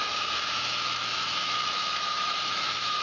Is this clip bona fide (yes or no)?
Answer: no